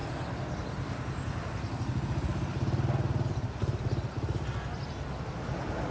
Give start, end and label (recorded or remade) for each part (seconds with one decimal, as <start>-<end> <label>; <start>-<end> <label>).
0.0-5.9 recorded